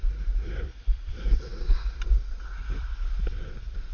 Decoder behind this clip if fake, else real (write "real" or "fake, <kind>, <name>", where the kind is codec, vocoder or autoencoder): fake, vocoder, BigVGAN v2